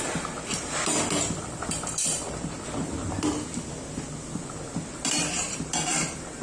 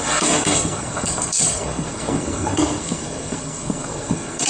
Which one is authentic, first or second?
first